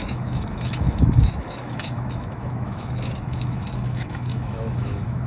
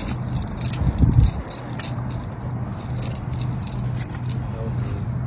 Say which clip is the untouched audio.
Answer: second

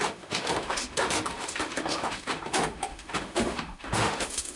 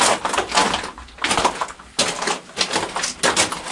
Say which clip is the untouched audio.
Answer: second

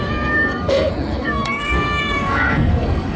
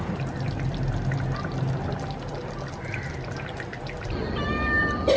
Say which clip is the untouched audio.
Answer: second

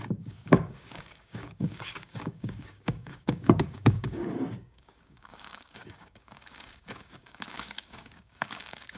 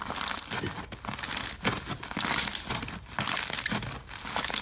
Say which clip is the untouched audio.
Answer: second